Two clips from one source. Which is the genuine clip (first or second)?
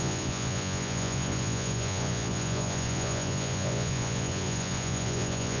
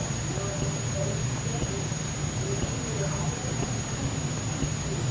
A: second